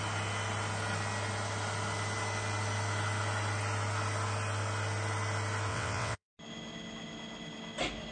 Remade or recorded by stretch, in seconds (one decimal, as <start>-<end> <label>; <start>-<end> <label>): 0.0-5.7 recorded; 5.7-6.3 remade; 6.3-8.1 recorded